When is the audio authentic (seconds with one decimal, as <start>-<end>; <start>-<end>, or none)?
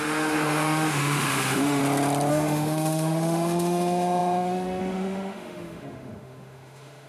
1.8-2.3